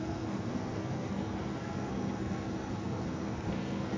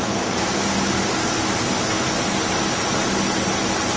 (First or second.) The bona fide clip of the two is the second